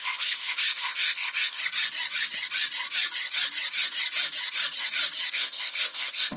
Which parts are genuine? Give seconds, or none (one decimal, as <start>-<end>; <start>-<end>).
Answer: 1.6-5.3